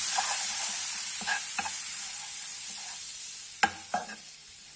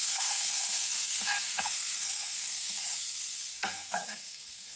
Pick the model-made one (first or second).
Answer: second